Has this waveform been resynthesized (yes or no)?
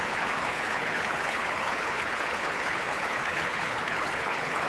yes